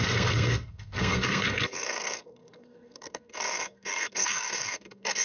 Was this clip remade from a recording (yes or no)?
yes